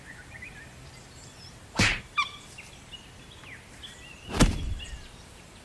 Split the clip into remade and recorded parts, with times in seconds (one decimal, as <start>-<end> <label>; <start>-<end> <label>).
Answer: 0.0-2.2 remade; 2.2-4.7 recorded; 4.7-5.6 remade